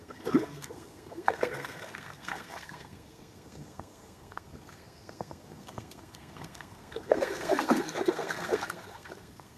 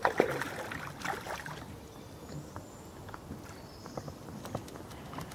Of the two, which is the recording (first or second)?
second